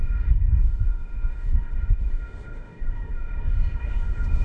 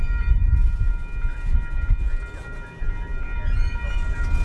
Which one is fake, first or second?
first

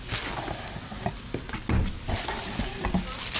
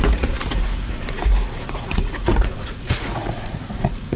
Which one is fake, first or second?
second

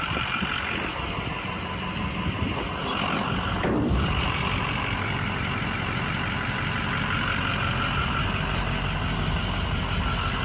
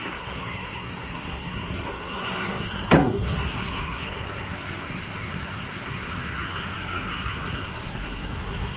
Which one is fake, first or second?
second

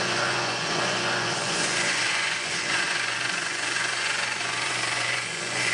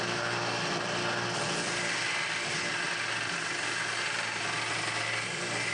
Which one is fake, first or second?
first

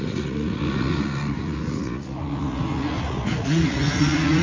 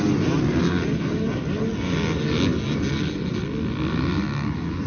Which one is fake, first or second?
first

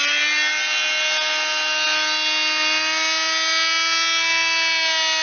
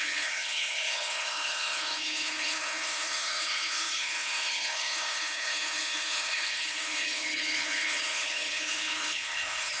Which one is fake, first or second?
second